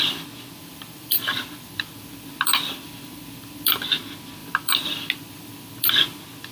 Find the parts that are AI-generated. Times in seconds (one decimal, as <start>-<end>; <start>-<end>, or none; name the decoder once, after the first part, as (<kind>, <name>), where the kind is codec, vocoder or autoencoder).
0.6-3.9 (vocoder, BigVGAN v2); 4.4-5.9